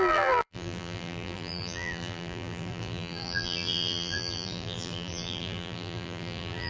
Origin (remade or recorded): remade